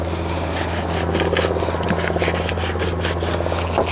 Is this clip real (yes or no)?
yes